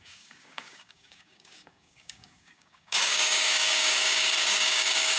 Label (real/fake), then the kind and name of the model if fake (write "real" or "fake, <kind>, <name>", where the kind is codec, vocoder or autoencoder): fake, codec, DAC